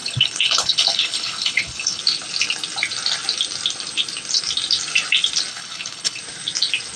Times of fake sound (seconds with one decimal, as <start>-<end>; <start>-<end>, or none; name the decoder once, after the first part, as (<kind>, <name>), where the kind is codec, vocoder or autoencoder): 0.0-2.0 (codec, HILCodec); 5.5-6.2